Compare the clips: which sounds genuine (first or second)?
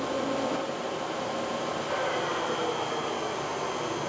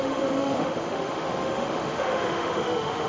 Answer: first